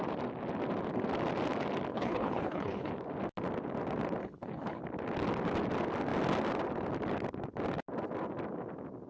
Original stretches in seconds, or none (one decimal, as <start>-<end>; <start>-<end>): 0.0-1.9; 2.9-4.2; 4.8-9.1

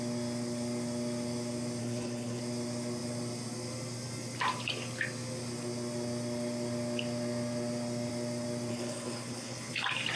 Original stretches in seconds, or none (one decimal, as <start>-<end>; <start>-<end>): 0.0-1.8; 2.4-8.7; 9.7-10.2

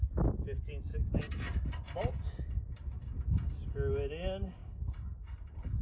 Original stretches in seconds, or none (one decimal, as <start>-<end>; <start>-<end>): 0.0-5.8

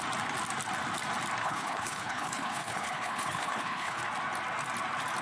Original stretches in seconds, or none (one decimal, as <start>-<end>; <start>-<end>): 0.0-1.4; 4.0-5.2